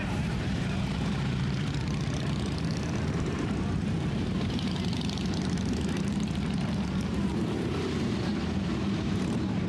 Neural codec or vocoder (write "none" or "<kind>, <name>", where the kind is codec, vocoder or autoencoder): vocoder, BigVGAN v2